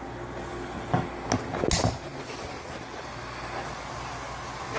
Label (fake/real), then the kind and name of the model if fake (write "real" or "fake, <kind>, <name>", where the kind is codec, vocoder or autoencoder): real